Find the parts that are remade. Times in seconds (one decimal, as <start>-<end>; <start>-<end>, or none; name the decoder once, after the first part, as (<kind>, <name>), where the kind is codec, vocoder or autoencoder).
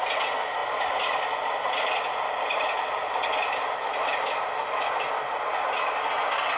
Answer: none